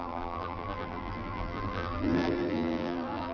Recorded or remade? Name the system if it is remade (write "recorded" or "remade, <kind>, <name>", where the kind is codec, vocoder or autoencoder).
remade, vocoder, BigVGAN v2